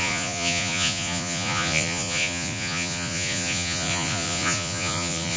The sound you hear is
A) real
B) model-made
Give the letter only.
B